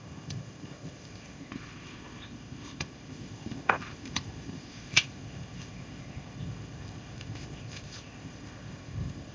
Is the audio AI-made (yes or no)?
yes